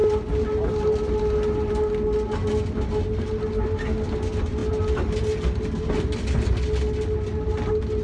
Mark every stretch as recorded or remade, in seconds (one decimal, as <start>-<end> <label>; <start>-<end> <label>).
0.0-8.0 recorded